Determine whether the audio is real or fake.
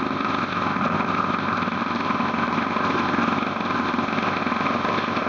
fake